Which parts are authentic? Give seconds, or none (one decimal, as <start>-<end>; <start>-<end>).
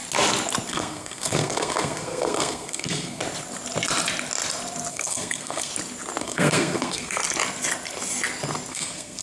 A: 0.0-0.7; 3.2-4.9; 5.7-6.2; 7.2-8.7